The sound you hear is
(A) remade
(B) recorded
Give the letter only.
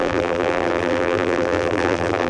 A